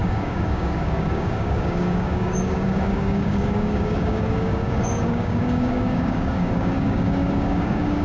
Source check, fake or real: fake